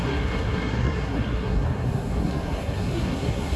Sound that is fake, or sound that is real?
fake